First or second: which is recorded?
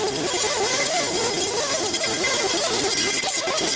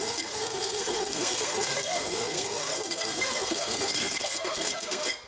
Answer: first